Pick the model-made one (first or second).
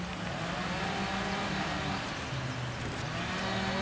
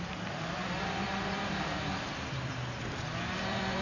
second